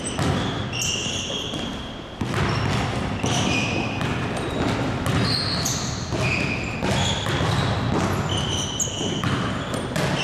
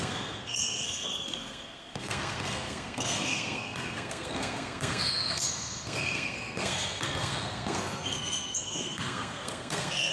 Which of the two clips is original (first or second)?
first